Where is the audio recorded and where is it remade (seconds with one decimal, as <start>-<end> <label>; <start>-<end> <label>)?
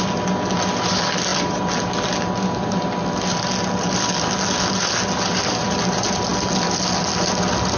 0.0-7.8 recorded